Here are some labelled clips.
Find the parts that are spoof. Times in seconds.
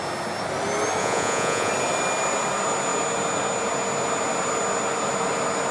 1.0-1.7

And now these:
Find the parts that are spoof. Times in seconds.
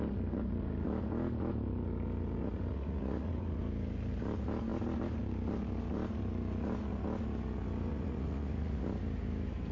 2.7-3.6; 7.9-8.8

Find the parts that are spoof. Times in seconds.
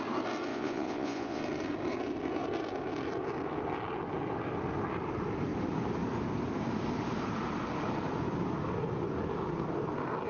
0.5-1.4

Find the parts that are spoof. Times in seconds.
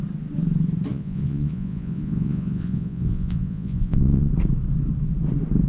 0.9-4.3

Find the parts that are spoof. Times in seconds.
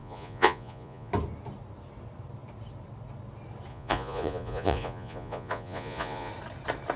0.0-1.1; 3.7-6.3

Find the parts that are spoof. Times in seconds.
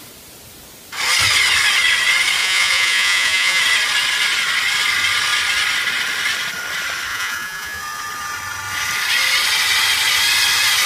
2.4-3.6; 7.1-7.8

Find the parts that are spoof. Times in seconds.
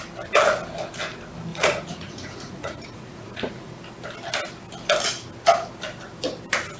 1.5-3.8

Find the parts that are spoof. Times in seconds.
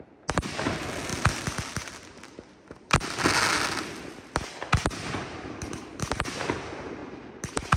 none